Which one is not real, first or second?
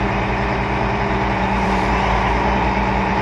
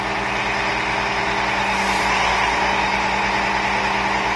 first